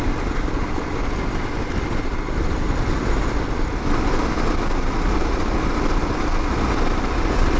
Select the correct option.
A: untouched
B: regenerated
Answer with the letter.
A